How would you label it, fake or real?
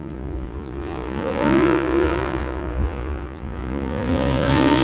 fake